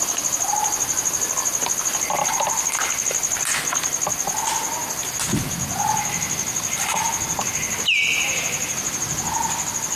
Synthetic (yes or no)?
no